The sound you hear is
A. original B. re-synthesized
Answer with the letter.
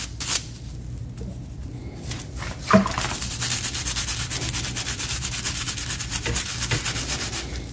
A